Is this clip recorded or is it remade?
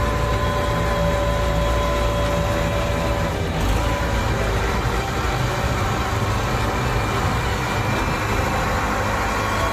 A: recorded